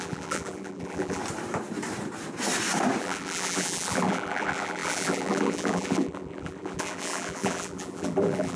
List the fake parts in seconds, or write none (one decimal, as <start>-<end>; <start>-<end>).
0.0-1.2; 3.0-8.6